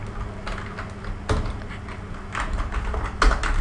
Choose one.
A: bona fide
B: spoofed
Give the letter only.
A